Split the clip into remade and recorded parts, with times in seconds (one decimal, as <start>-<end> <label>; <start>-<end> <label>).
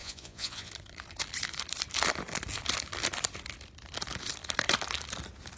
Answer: 0.0-0.7 remade; 0.7-5.6 recorded